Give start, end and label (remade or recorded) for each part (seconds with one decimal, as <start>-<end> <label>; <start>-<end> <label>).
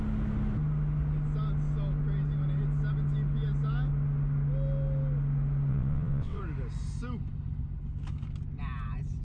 0.0-5.7 recorded; 5.7-6.4 remade; 6.4-9.2 recorded